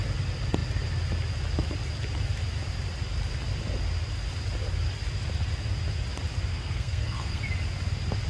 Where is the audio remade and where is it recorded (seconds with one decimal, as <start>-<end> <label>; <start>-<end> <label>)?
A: 0.0-6.5 recorded; 6.5-7.4 remade; 7.4-8.3 recorded